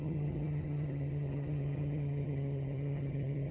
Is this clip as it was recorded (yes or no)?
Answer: no